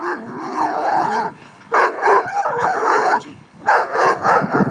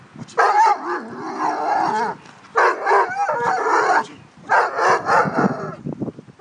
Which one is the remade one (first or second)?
first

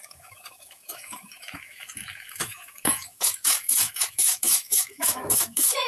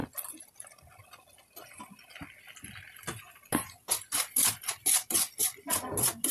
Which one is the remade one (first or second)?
first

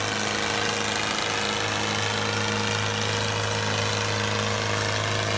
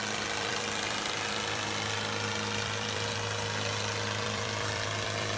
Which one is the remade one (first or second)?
second